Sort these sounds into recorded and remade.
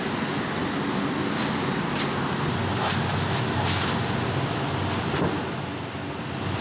recorded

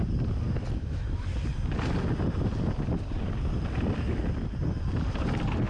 recorded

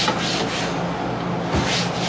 recorded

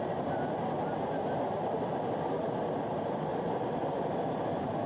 recorded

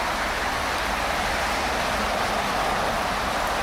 recorded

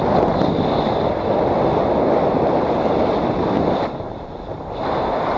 recorded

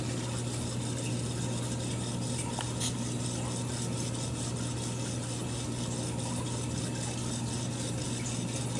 recorded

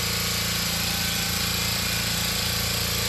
recorded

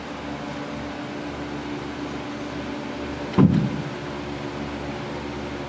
recorded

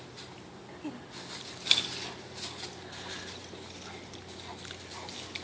recorded